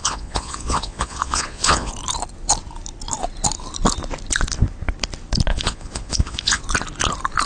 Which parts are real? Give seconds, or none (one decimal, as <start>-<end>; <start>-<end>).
1.9-5.5; 6.6-7.5